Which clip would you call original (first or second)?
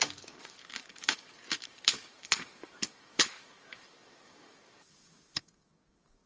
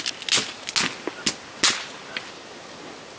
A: second